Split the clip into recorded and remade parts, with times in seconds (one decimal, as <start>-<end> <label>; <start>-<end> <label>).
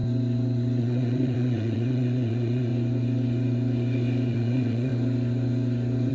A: 0.0-0.8 recorded; 0.8-2.7 remade; 2.7-4.3 recorded; 4.3-4.9 remade; 4.9-6.1 recorded